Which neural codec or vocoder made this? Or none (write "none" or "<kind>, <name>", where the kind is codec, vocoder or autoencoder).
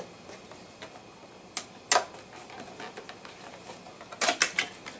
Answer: none